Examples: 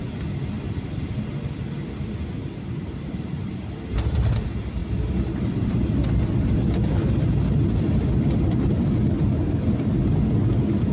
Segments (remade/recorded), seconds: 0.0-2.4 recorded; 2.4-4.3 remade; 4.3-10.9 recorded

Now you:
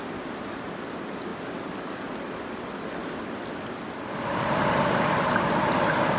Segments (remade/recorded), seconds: 0.0-6.2 recorded